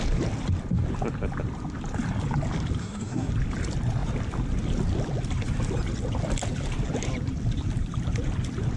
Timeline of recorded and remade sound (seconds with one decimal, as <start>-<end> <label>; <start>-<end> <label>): 0.0-2.8 recorded; 2.8-3.3 remade; 3.3-8.8 recorded